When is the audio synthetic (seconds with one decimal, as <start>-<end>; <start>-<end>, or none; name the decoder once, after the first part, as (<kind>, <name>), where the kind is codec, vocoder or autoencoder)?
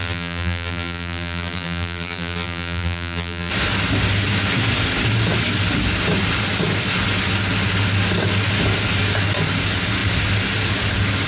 0.0-3.5 (vocoder, BigVGAN v2)